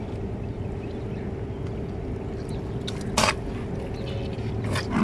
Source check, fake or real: real